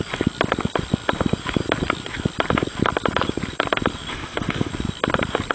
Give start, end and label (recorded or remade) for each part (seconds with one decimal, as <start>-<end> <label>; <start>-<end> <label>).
0.0-4.1 recorded; 4.1-4.7 remade; 4.7-5.5 recorded

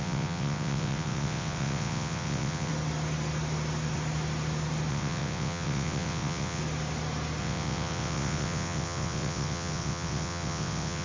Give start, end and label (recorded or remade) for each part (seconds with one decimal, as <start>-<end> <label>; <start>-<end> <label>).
0.0-2.7 remade; 2.7-4.9 recorded; 4.9-6.6 remade; 6.6-7.4 recorded; 7.4-11.0 remade

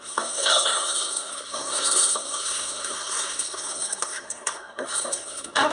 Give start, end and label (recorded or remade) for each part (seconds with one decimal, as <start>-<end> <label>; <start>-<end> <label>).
0.0-5.7 remade